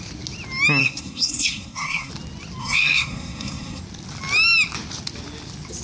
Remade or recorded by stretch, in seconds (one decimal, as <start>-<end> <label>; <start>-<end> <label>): 0.0-0.8 recorded; 0.8-2.1 remade; 2.1-2.6 recorded; 2.6-3.8 remade; 3.8-5.8 recorded